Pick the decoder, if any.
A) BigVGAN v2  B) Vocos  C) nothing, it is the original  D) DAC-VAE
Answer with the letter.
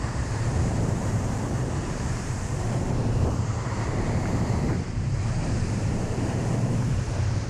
A